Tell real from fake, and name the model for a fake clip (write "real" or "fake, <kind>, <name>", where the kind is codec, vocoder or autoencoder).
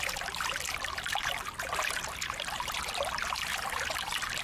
real